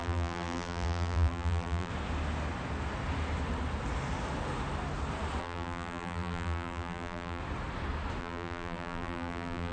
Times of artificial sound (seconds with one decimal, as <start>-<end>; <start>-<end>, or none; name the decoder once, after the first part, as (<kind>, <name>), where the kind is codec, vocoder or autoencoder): 0.0-1.9 (vocoder, BigVGAN v2); 5.4-7.4; 8.2-9.7